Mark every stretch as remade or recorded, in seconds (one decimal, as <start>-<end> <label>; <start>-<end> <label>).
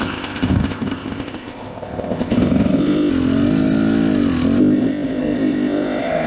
0.0-3.1 remade; 3.1-4.6 recorded; 4.6-6.3 remade